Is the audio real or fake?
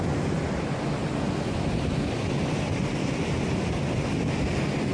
real